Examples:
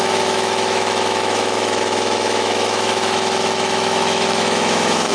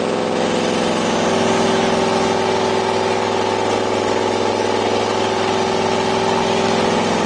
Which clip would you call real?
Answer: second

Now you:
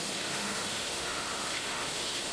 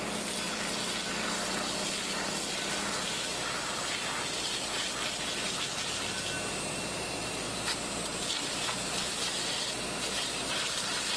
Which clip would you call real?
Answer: second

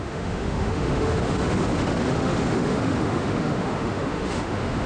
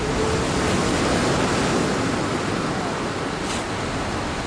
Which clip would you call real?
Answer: second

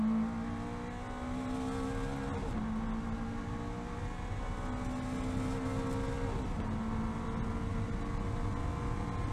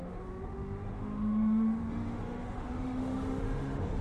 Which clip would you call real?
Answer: first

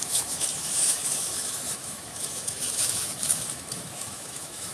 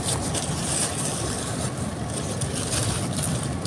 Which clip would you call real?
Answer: second